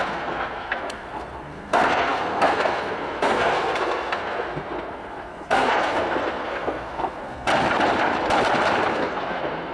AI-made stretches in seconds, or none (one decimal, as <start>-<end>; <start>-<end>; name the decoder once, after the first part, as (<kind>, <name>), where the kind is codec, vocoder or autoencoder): 0.0-7.5 (codec, SNAC); 8.9-9.7